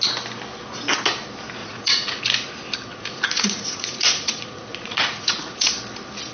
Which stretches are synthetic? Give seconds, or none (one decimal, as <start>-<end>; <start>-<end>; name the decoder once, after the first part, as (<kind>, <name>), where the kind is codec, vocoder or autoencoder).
1.6-2.2 (vocoder, Vocos); 2.9-5.7